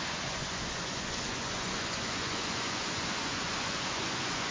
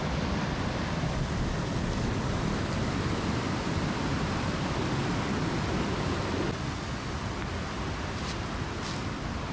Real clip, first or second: second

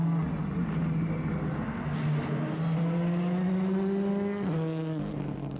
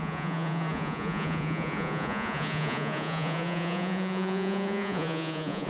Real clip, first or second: first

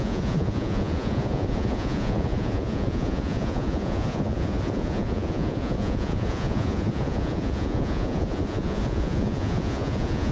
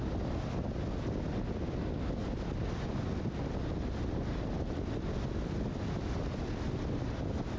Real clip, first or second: second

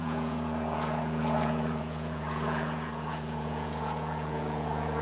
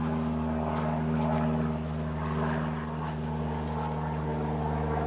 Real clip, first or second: second